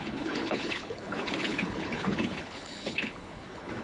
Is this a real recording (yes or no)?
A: no